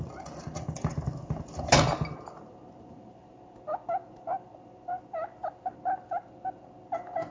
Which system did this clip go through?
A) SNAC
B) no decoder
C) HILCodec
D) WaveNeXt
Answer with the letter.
B